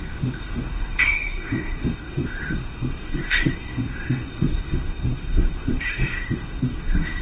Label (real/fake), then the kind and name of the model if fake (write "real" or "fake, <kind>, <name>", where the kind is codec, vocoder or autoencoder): fake, codec, SNAC